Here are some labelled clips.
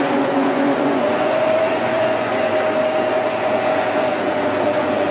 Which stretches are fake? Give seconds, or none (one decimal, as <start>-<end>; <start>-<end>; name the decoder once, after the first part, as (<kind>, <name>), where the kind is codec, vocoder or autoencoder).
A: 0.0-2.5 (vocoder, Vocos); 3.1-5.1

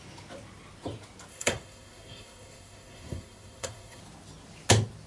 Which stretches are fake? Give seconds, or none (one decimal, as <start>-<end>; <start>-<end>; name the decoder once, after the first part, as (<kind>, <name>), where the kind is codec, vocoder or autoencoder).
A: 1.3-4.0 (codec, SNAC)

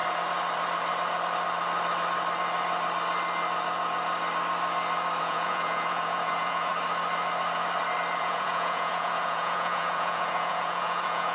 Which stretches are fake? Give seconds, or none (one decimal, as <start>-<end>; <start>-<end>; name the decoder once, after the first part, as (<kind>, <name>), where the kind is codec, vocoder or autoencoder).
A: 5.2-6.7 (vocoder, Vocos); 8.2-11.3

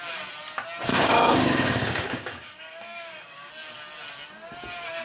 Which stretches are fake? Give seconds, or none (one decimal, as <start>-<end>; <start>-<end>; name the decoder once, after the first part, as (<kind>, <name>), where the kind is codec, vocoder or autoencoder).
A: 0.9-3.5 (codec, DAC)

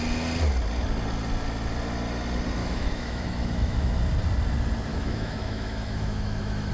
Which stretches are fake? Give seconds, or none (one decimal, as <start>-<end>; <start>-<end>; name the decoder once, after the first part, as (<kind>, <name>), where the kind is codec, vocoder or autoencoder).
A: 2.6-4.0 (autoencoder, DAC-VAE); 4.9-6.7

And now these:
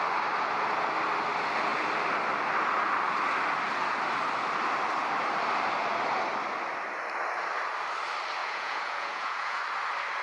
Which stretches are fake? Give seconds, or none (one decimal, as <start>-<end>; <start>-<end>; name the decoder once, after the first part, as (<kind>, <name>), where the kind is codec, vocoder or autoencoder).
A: 8.4-9.6 (vocoder, Vocos)

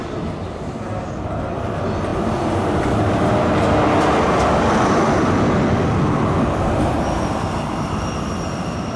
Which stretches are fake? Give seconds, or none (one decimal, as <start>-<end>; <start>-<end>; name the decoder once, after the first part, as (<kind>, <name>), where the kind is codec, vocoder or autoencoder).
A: none

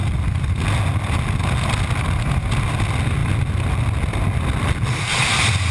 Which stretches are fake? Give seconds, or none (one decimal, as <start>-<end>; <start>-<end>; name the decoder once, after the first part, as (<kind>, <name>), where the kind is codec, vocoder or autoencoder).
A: none